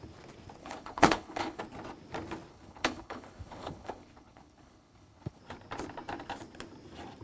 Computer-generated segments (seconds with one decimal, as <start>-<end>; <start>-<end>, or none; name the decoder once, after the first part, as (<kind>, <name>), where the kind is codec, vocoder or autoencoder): 0.6-1.6 (codec, HILCodec); 2.5-5.4